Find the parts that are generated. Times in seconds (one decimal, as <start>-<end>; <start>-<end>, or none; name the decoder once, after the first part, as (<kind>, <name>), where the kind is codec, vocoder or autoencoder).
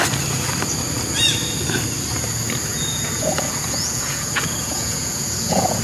2.7-5.8 (vocoder, Vocos)